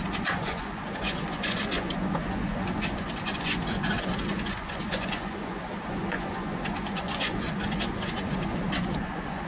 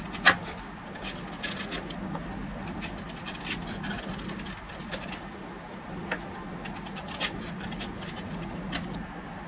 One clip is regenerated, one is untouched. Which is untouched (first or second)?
second